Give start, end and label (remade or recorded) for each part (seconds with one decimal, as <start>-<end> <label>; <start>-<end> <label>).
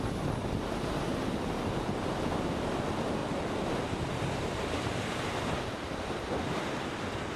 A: 0.0-1.1 recorded; 1.1-2.2 remade; 2.2-3.2 recorded; 3.2-6.3 remade; 6.3-7.4 recorded